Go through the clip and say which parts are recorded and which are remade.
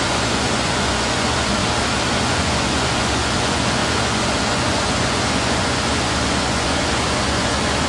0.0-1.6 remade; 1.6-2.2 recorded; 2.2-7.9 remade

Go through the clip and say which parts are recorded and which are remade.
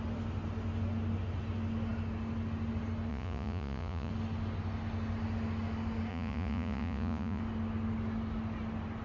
0.0-3.1 recorded; 3.1-4.1 remade; 4.1-6.1 recorded; 6.1-7.4 remade; 7.4-9.0 recorded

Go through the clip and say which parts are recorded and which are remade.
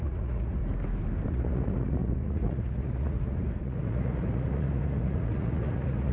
0.0-0.6 remade; 0.6-1.3 recorded; 1.3-6.1 remade